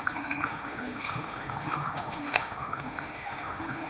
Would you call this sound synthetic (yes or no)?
yes